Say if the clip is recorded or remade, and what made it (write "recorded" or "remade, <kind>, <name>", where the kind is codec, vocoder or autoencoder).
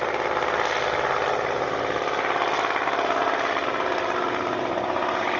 recorded